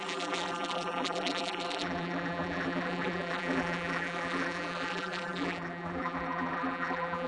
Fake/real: fake